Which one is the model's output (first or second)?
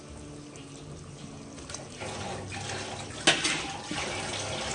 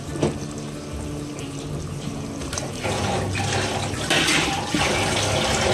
second